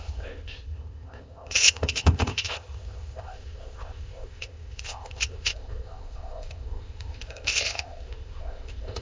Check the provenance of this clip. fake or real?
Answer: fake